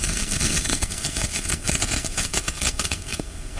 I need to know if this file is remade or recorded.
remade